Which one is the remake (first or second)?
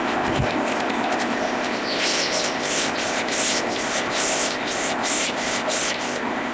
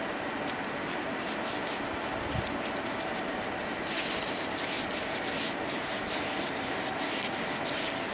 first